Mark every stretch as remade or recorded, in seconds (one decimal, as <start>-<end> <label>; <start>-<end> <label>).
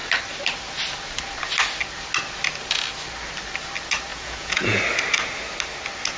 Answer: 0.0-4.1 recorded; 4.1-4.8 remade; 4.8-6.2 recorded